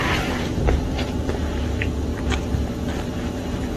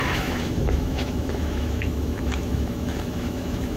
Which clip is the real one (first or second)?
first